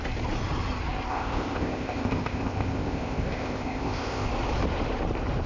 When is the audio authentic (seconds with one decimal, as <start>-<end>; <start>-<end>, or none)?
0.0-1.1; 4.3-5.5